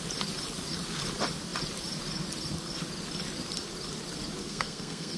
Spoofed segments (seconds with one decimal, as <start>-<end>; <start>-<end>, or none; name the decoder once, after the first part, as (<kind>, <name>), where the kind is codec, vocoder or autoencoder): 4.4-5.2 (codec, SNAC)